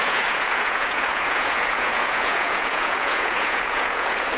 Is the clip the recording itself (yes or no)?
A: no